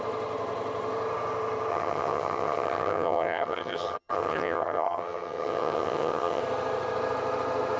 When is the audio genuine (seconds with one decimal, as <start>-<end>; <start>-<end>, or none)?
0.0-1.7; 6.4-7.8